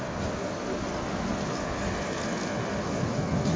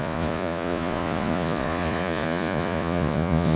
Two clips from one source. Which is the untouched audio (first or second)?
first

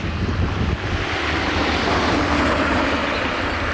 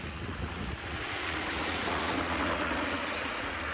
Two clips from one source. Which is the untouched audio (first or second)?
first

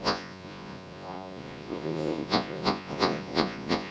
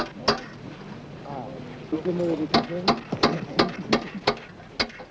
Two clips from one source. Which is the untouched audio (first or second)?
second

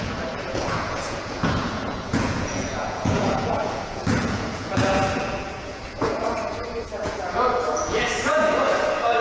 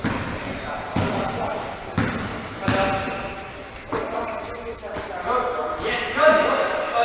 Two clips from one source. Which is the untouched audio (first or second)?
second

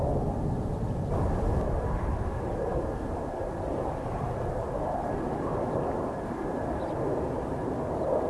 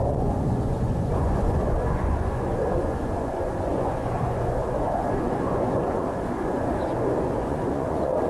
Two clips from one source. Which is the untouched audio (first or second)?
first